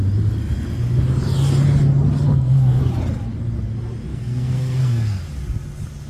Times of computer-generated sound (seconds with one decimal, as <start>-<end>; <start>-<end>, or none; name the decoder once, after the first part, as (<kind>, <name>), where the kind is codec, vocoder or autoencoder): 2.3-2.8 (codec, SNAC); 4.1-5.2